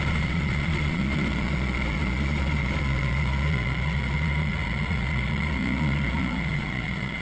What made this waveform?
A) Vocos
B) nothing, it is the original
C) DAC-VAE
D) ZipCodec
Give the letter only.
A